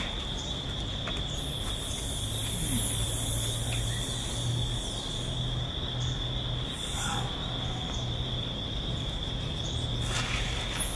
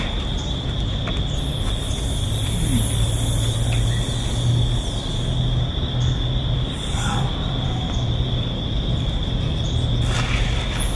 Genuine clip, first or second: first